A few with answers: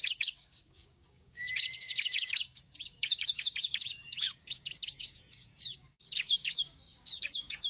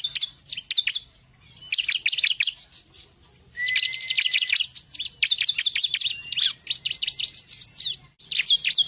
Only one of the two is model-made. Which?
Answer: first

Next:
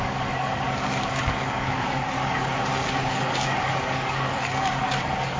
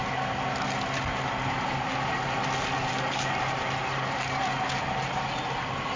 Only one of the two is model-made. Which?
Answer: first